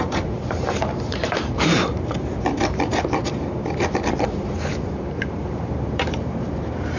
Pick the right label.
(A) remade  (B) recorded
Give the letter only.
A